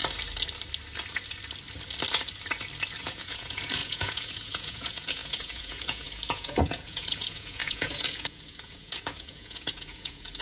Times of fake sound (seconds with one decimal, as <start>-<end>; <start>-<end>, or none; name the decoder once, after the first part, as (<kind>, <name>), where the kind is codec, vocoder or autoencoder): 3.0-10.4 (vocoder, Vocos)